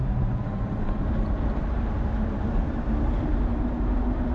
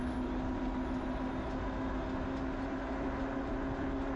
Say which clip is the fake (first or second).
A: first